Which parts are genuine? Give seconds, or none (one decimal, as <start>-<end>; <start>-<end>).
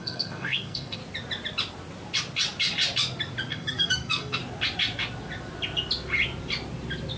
1.0-3.5; 4.4-7.2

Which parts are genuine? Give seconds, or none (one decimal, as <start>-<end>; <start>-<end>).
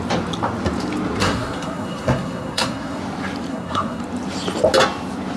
0.0-1.2; 3.0-3.5; 4.0-5.4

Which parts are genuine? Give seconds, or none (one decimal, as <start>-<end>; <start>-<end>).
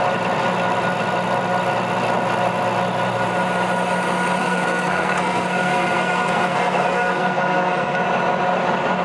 0.0-4.4; 8.0-9.0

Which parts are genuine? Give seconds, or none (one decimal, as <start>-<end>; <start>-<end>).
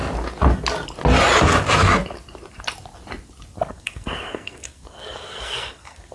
0.0-3.7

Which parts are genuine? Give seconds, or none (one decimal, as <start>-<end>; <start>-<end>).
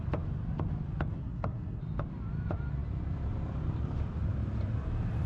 0.0-1.2; 1.8-5.3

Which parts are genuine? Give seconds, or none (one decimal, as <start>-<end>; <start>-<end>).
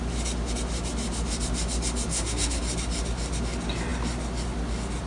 0.0-2.1; 2.6-5.1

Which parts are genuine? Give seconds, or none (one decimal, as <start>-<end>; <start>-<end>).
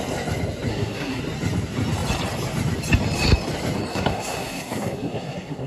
0.0-0.7; 1.2-3.9